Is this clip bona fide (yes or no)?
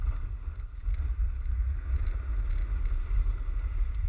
yes